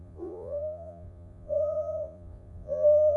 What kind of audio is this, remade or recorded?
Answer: remade